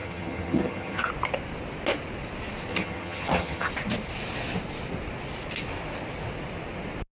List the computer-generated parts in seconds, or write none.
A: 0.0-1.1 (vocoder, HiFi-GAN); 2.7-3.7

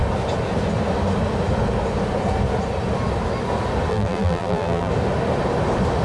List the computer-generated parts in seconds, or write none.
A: 3.9-4.9 (vocoder, BigVGAN v2)

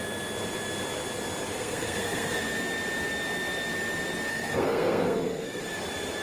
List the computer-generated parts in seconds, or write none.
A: 1.6-2.4 (codec, SNAC); 4.3-5.6

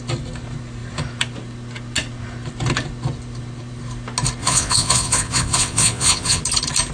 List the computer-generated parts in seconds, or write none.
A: 4.4-6.4 (vocoder, Vocos)

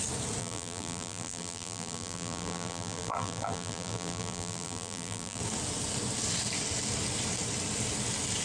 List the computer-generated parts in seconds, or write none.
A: 0.4-5.4 (vocoder, BigVGAN v2)

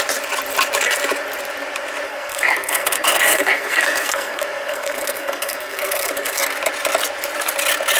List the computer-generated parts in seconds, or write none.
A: 2.1-6.4 (codec, SNAC)

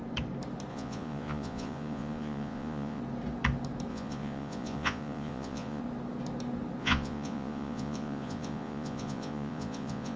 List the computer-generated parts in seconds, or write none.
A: 0.7-3.0 (vocoder, Vocos); 3.9-5.8; 6.8-10.2